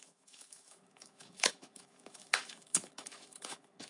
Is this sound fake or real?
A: fake